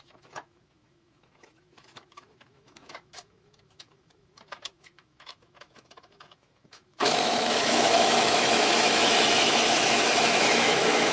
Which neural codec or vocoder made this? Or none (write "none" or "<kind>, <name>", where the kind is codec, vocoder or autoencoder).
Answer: autoencoder, DAC-VAE